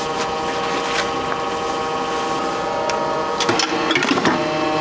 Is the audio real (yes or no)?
yes